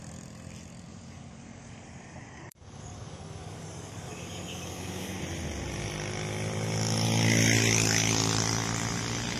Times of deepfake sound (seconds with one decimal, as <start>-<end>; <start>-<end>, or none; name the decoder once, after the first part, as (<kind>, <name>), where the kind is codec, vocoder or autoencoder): 0.9-5.2 (codec, DAC)